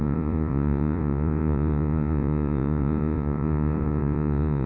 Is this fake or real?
fake